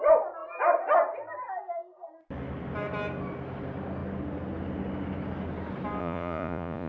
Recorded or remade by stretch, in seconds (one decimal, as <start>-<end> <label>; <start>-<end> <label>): 0.0-6.0 recorded; 6.0-6.9 remade